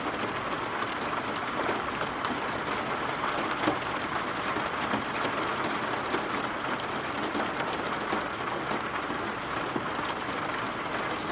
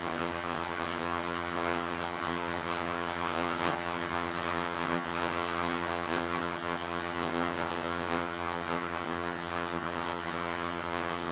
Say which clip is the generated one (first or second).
second